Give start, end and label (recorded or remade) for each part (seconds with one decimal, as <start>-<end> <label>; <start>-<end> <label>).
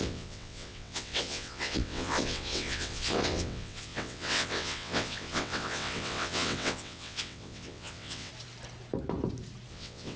0.0-8.3 remade; 8.3-9.7 recorded; 9.7-10.2 remade